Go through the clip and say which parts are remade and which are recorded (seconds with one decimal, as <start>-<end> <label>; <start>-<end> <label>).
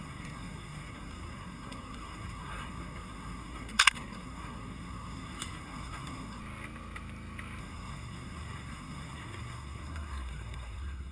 0.0-6.4 remade; 6.4-7.6 recorded; 7.6-11.1 remade